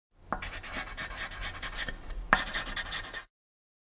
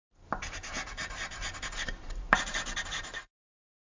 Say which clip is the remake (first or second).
second